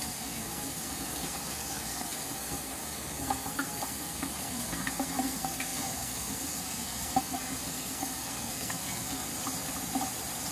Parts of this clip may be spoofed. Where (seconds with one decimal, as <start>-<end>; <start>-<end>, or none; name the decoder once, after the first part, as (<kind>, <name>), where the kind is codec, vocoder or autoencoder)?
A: 0.0-9.3 (codec, SNAC)